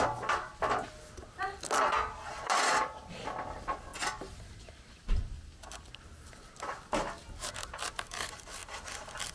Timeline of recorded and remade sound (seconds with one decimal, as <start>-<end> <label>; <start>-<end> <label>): 0.0-9.3 recorded